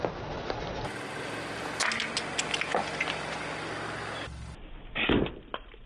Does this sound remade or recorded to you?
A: recorded